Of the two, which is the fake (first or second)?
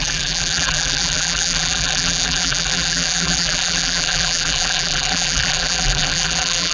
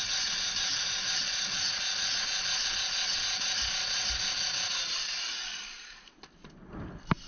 first